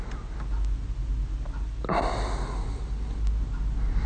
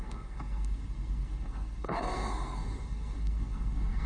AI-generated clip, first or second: second